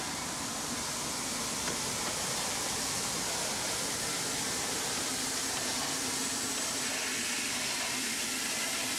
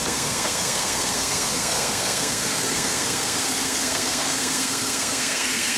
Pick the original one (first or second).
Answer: first